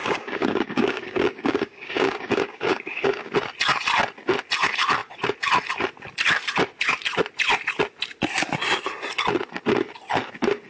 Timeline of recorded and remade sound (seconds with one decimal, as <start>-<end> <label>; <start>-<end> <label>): 0.0-3.3 remade; 3.3-10.7 recorded